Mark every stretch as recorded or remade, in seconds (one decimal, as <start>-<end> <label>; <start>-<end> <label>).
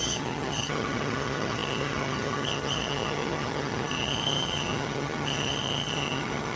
0.0-6.6 remade